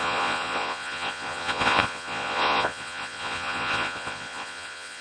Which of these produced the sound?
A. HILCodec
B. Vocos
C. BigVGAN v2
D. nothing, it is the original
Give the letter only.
B